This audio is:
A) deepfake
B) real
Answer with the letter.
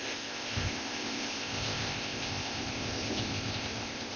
A